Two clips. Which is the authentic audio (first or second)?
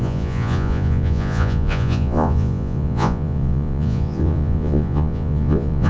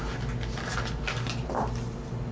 second